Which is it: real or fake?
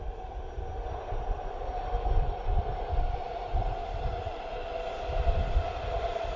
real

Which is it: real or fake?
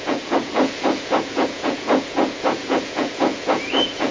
fake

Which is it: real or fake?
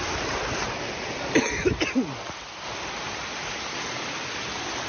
real